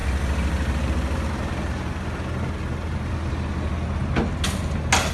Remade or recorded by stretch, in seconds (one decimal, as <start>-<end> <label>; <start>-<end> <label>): 0.0-5.1 recorded